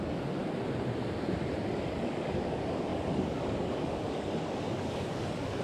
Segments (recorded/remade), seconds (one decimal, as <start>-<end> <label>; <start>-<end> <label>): 0.0-0.4 remade; 0.4-1.7 recorded; 1.7-5.6 remade